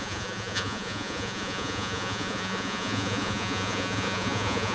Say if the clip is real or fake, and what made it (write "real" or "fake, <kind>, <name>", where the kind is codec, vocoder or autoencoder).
fake, vocoder, Vocos